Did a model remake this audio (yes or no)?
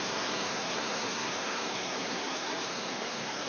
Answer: yes